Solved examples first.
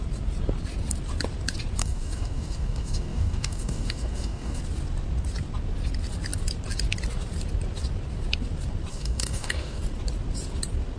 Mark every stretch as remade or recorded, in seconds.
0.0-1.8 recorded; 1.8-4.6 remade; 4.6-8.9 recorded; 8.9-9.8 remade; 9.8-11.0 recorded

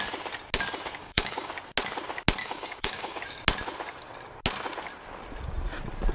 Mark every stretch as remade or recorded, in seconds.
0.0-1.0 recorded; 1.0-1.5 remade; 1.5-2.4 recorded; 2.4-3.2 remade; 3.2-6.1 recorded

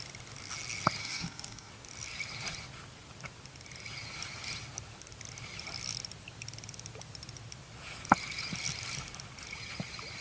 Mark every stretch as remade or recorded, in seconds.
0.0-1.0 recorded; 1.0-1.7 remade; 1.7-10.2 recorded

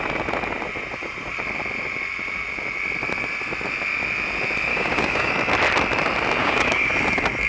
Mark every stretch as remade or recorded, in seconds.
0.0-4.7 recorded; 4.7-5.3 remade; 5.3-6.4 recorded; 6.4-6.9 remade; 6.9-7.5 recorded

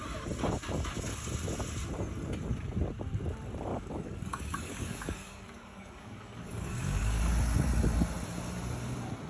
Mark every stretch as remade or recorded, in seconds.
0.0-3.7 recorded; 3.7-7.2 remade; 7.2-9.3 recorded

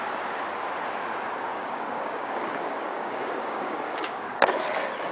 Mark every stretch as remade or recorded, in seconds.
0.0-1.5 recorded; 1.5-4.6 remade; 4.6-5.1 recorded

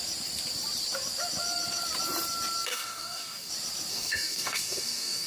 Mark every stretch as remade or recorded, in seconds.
0.0-2.7 recorded; 2.7-3.5 remade; 3.5-3.9 recorded; 3.9-5.3 remade

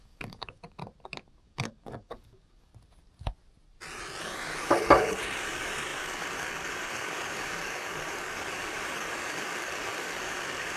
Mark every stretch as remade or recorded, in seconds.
0.0-0.8 remade; 0.8-1.4 recorded; 1.4-2.7 remade; 2.7-4.2 recorded; 4.2-10.8 remade